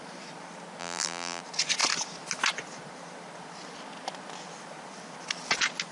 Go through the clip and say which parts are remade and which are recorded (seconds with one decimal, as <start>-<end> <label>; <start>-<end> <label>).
0.0-0.8 recorded; 0.8-1.4 remade; 1.4-5.9 recorded